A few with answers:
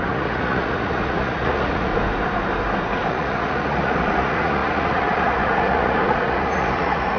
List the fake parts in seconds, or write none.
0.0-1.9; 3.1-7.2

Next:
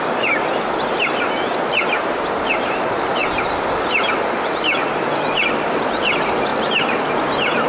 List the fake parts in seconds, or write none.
none

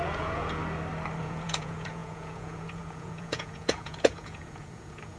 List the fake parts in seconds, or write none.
0.0-0.6; 1.2-5.2

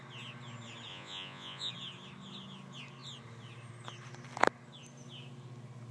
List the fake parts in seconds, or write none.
0.9-1.7

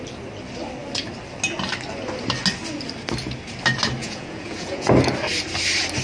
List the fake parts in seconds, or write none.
4.0-4.9